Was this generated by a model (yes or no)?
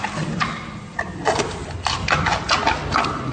no